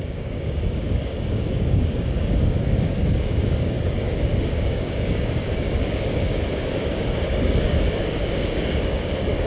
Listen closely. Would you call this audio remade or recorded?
remade